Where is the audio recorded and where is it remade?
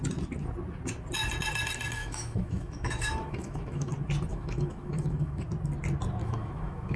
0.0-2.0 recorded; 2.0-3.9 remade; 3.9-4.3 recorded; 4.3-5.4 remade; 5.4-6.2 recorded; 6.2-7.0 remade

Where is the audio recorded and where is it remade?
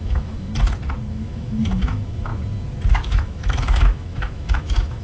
0.0-0.5 remade; 0.5-1.1 recorded; 1.1-2.3 remade; 2.3-2.9 recorded; 2.9-5.0 remade